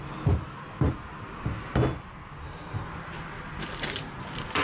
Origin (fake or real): real